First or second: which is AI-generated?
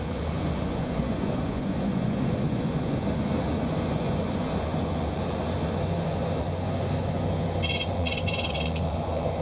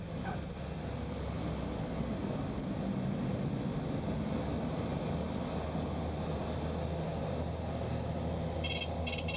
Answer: first